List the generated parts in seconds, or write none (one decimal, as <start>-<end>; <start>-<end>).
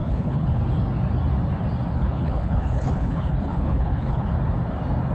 0.0-0.6; 1.9-4.3